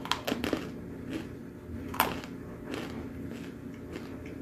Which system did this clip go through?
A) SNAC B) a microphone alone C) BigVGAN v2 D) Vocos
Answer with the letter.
B